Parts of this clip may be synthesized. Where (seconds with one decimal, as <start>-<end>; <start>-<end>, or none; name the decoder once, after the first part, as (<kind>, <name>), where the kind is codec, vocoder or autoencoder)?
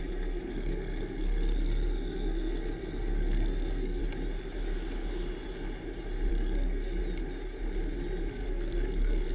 0.0-4.0 (codec, SNAC); 6.3-7.0; 8.3-9.3